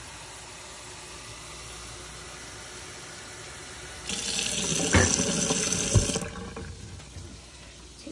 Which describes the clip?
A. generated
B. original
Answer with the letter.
B